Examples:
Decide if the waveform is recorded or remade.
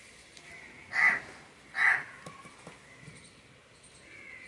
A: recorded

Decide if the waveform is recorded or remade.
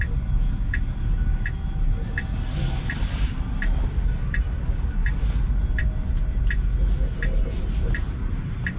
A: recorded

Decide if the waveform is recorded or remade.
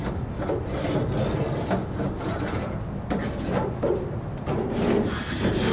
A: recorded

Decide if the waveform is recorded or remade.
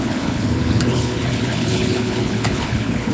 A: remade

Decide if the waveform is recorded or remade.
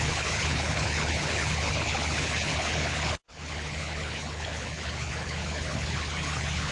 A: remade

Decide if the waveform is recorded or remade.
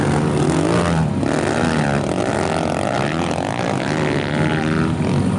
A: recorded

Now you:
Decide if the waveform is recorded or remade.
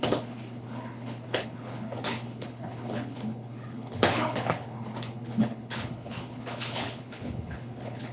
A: remade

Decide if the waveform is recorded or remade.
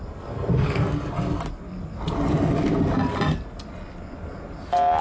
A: recorded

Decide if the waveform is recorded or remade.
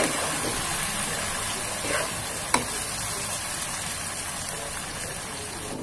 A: recorded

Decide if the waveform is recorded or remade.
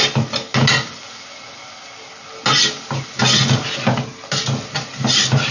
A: recorded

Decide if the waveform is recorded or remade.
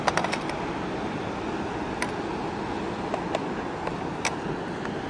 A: recorded